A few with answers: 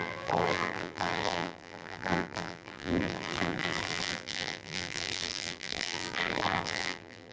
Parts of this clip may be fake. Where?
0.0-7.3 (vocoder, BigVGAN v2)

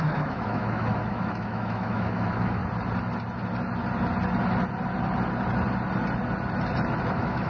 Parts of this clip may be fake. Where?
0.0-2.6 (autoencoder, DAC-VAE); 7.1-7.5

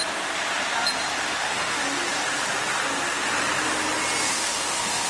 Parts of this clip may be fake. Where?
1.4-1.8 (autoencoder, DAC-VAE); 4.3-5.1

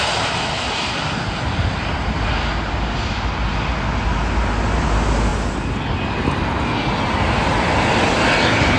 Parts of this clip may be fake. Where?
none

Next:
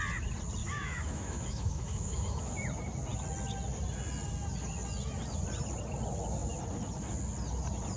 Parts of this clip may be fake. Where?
0.6-2.5 (autoencoder, DAC-VAE)